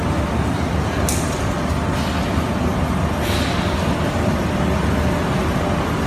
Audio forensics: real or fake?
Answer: real